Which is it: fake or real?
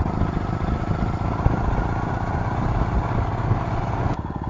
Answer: real